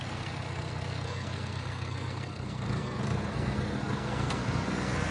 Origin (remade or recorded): remade